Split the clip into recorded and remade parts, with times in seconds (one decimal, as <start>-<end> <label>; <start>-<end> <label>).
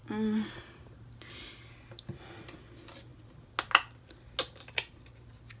0.0-5.6 recorded